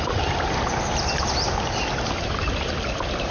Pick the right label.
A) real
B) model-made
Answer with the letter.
A